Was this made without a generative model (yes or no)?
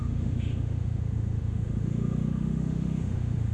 no